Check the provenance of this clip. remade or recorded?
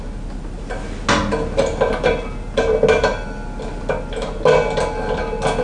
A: recorded